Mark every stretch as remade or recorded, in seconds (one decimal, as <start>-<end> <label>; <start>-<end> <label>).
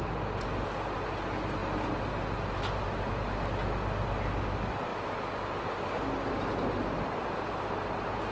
0.0-8.3 recorded